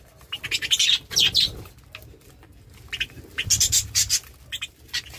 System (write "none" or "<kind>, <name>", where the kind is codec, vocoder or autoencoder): none